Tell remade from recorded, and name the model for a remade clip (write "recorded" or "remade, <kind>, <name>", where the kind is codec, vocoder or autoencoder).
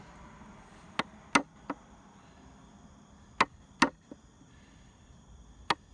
recorded